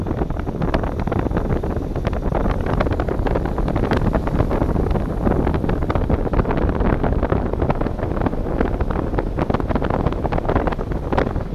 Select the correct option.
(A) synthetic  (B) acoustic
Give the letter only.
B